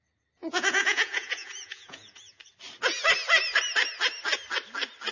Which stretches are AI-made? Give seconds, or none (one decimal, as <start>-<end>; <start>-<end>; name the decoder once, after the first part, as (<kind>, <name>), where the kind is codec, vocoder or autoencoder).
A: 0.4-2.4 (vocoder, Vocos)